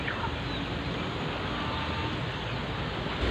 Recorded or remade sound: recorded